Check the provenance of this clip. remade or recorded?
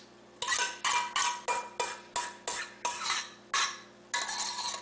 recorded